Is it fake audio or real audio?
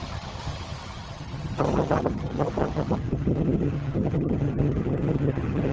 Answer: fake